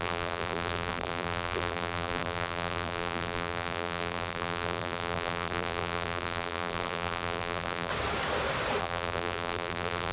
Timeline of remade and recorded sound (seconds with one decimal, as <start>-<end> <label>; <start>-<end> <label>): 0.0-7.9 remade; 7.9-8.8 recorded; 8.8-10.1 remade